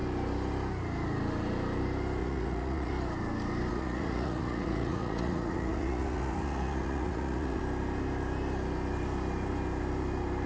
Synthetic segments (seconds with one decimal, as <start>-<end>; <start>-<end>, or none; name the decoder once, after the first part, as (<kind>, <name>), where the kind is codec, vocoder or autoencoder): 2.2-2.9 (vocoder, Vocos); 3.7-7.6